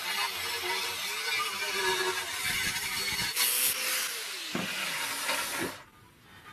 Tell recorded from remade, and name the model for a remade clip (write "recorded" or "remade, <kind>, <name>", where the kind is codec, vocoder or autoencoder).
recorded